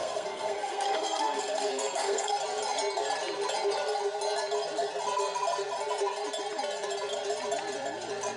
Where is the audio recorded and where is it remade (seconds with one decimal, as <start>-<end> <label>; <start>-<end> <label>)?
0.0-2.3 remade; 2.3-8.4 recorded